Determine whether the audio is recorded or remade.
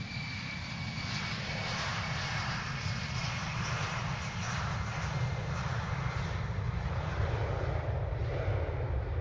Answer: recorded